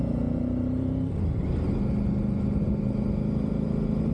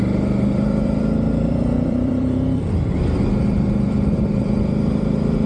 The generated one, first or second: second